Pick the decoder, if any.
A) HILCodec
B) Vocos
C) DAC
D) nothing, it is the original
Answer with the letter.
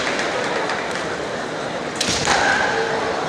D